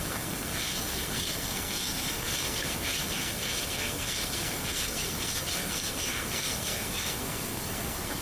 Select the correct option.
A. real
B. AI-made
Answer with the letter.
B